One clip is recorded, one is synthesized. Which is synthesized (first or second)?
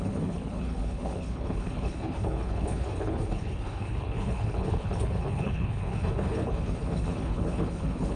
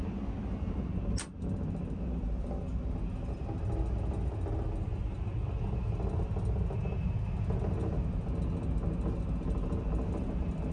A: first